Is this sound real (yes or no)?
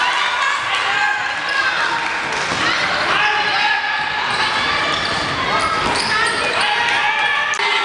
yes